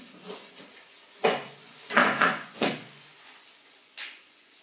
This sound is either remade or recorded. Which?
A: remade